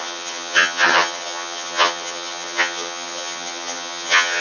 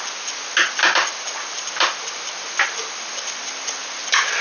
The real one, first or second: second